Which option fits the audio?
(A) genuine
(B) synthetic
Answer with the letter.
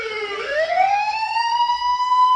B